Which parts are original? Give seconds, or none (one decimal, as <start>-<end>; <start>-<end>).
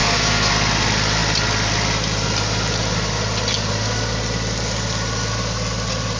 0.5-6.2